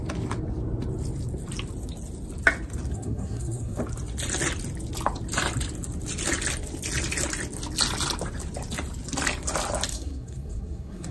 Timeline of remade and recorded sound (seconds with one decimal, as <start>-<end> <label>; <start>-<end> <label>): 0.0-2.9 recorded; 2.9-3.8 remade; 3.8-9.9 recorded; 9.9-11.1 remade